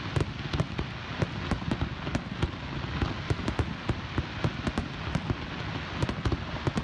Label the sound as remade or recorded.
recorded